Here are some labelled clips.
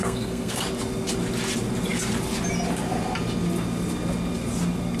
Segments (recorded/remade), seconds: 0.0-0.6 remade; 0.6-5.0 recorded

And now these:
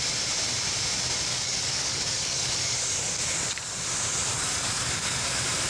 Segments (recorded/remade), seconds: 0.0-1.3 recorded; 1.3-3.2 remade; 3.2-4.3 recorded; 4.3-5.2 remade; 5.2-5.7 recorded

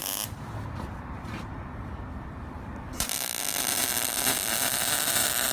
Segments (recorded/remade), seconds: 0.0-5.5 remade

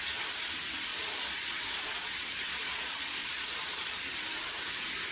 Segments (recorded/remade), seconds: 0.0-0.9 recorded; 0.9-4.0 remade; 4.0-5.1 recorded

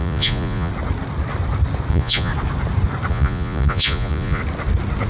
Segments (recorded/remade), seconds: 0.0-0.7 remade; 0.7-1.9 recorded; 1.9-2.3 remade; 2.3-3.1 recorded; 3.1-4.4 remade; 4.4-5.1 recorded

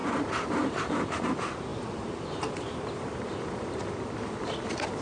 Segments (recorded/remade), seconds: 0.0-0.8 remade; 0.8-1.7 recorded; 1.7-3.9 remade; 3.9-5.0 recorded

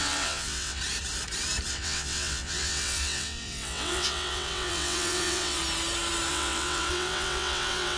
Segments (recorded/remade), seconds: 0.0-0.8 remade; 0.8-1.7 recorded; 1.7-5.6 remade; 5.6-6.3 recorded; 6.3-8.0 remade

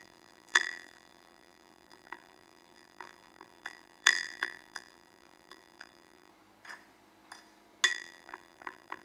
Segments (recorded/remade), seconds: 0.0-6.3 remade; 6.3-7.9 recorded; 7.9-9.0 remade